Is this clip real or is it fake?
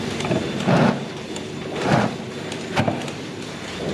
fake